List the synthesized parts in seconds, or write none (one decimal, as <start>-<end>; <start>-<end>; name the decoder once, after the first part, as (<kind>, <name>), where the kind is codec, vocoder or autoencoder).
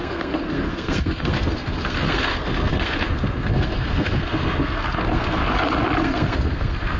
0.0-5.4 (codec, SNAC); 6.0-7.0